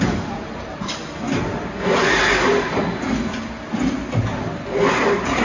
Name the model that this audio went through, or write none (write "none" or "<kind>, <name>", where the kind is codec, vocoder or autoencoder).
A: none